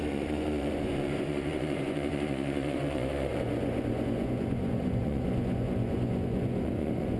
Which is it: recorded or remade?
remade